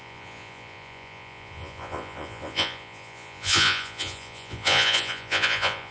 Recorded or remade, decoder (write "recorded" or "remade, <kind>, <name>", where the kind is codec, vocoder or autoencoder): remade, vocoder, Vocos